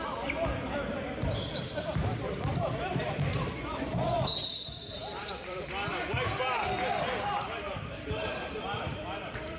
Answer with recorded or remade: remade